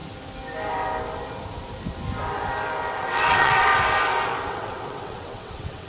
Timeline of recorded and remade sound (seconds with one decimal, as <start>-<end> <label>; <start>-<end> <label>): 0.0-2.9 recorded; 2.9-3.7 remade; 3.7-4.5 recorded; 4.5-5.9 remade